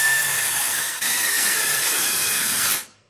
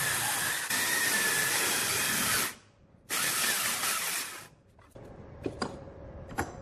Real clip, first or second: second